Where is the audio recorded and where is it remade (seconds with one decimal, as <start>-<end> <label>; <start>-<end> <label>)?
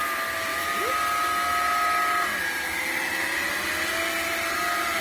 0.0-5.0 recorded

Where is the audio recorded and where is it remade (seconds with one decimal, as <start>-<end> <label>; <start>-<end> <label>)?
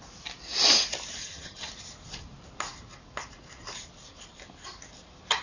0.0-1.2 recorded; 1.2-1.7 remade; 1.7-5.4 recorded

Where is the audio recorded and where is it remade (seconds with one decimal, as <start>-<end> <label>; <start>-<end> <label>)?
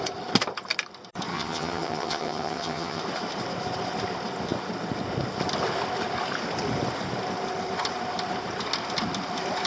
0.0-1.3 recorded; 1.3-3.0 remade; 3.0-9.7 recorded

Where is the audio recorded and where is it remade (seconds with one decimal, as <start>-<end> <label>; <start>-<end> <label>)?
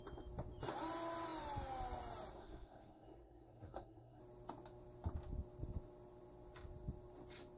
0.0-2.3 recorded; 2.3-4.2 remade; 4.2-7.6 recorded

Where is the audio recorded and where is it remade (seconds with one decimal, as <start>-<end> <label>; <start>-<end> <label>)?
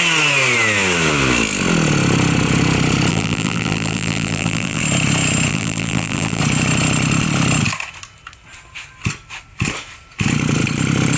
0.0-3.1 recorded; 3.1-4.8 remade; 4.8-5.5 recorded; 5.5-6.4 remade; 6.4-11.2 recorded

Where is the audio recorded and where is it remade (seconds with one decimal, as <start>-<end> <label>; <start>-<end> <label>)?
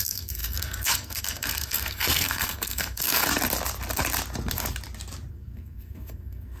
0.0-3.2 remade; 3.2-5.3 recorded; 5.3-6.6 remade